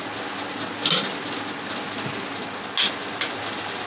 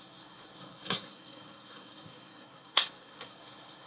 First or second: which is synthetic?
second